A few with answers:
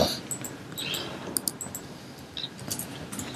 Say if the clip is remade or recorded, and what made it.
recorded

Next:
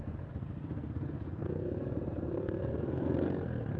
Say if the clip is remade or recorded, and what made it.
remade, codec, SNAC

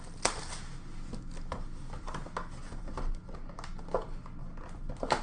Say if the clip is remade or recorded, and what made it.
recorded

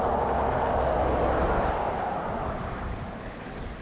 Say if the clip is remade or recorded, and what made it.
recorded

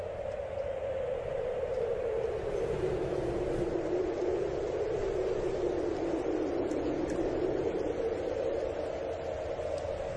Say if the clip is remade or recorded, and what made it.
recorded